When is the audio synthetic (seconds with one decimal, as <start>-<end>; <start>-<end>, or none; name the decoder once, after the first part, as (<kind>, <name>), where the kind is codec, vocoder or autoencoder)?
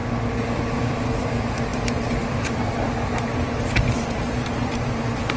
0.8-5.4 (vocoder, BigVGAN v2)